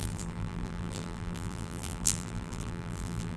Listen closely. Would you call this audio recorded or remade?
remade